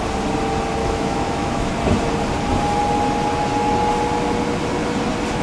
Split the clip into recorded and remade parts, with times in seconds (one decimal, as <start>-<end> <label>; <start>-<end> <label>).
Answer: 0.0-0.8 recorded; 0.8-1.7 remade; 1.7-5.4 recorded